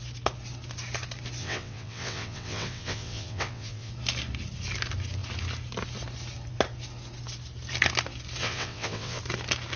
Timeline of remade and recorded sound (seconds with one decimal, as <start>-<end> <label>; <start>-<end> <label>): 0.0-1.4 recorded; 1.4-3.9 remade; 3.9-8.4 recorded; 8.4-9.2 remade; 9.2-9.8 recorded